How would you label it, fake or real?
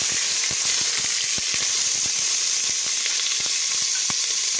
real